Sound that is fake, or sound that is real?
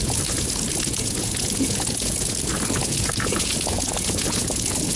fake